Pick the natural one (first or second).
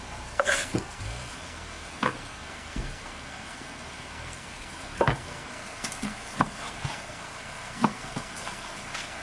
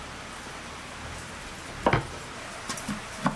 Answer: second